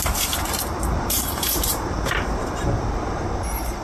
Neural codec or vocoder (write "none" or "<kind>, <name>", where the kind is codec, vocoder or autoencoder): vocoder, BigVGAN v2